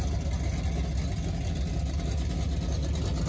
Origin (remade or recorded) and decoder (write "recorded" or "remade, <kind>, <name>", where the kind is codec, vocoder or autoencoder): recorded